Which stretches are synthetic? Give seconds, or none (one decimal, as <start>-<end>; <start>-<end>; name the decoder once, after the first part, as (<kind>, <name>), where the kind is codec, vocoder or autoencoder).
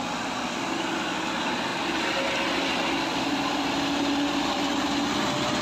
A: none